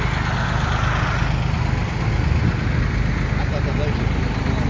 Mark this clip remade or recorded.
recorded